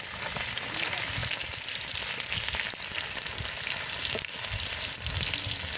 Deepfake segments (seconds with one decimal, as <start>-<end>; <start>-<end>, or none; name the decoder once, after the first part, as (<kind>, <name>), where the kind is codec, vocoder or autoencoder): none